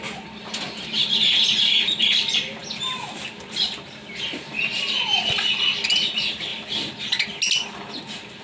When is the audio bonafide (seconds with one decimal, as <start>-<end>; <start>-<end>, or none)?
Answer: 0.0-6.5; 7.0-8.4